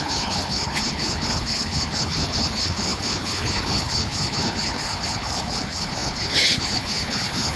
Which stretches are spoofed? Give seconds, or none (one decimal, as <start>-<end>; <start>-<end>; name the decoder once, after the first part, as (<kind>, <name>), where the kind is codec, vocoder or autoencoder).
0.0-7.6 (codec, HILCodec)